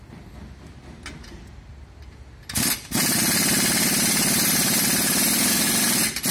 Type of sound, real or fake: real